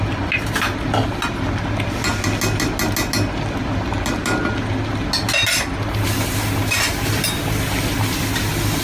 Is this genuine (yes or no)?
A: yes